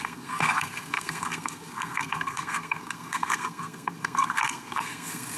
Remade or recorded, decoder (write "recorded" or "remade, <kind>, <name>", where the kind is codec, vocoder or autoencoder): remade, codec, SNAC